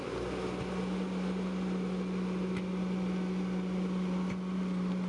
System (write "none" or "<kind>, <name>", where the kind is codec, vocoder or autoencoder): none